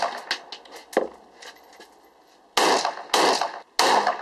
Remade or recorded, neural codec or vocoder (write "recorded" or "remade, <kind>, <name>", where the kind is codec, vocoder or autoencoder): recorded